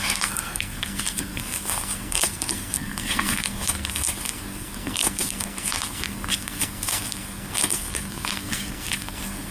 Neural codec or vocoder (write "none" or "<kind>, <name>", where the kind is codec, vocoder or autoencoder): codec, SNAC